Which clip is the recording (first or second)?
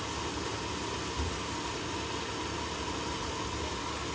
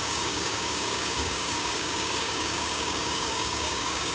first